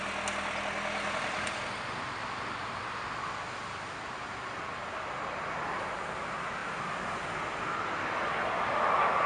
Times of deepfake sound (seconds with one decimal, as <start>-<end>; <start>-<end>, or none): none